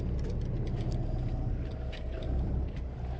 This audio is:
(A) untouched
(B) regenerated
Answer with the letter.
A